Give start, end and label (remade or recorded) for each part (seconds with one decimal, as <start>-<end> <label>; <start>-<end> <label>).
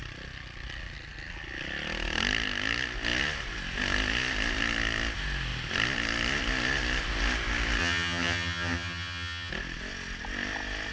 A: 0.0-7.8 recorded; 7.8-9.5 remade; 9.5-10.9 recorded